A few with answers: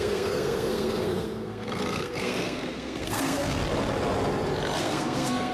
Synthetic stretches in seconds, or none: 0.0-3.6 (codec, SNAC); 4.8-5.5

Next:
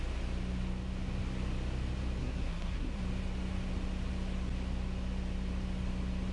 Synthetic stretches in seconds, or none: 2.2-3.0 (codec, SNAC)

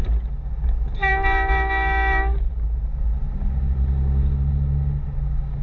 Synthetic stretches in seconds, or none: none

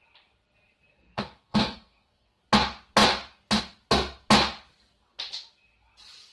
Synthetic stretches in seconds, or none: 0.9-2.4 (codec, SNAC)